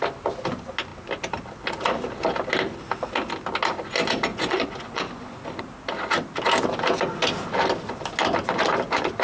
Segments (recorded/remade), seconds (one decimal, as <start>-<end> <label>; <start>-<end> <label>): 0.0-4.3 recorded; 4.3-5.6 remade; 5.6-9.2 recorded